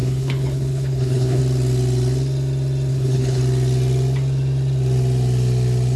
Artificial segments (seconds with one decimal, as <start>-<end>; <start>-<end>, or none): 0.0-1.4; 2.9-3.4